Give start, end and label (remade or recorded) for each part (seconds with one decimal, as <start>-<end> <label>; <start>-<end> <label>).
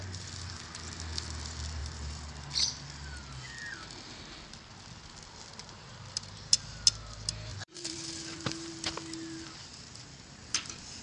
0.0-1.8 recorded; 1.8-2.3 remade; 2.3-5.6 recorded; 5.6-6.3 remade; 6.3-7.5 recorded; 7.5-8.7 remade; 8.7-11.0 recorded